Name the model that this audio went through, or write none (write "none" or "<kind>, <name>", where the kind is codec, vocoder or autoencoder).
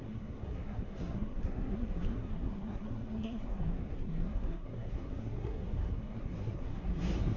codec, SNAC